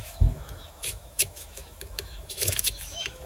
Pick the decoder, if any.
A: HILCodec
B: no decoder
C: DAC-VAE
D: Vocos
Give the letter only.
C